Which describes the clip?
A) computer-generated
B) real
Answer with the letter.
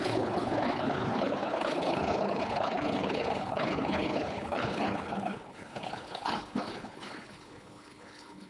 A